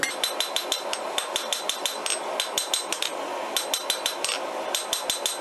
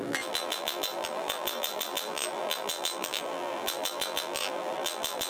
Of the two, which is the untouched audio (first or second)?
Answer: first